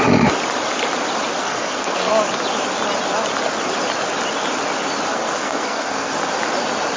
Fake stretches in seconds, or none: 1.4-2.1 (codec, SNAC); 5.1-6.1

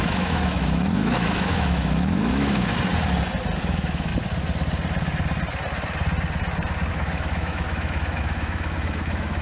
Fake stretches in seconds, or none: 0.0-2.7 (autoencoder, DAC-VAE); 3.6-4.1; 6.9-9.4

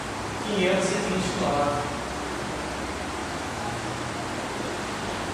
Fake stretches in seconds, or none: 3.2-4.1 (autoencoder, DAC-VAE)

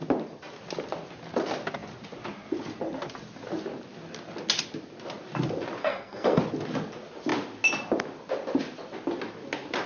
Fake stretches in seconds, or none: 5.8-6.4 (codec, SNAC)

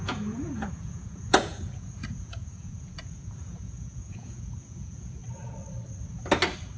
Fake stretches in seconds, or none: 0.0-5.2 (vocoder, Vocos)

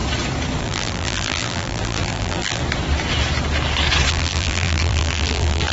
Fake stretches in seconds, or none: 0.6-2.6 (vocoder, BigVGAN v2); 4.1-5.7

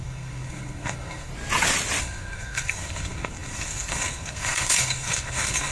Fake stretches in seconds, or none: 0.0-1.3 (codec, SNAC); 2.0-5.7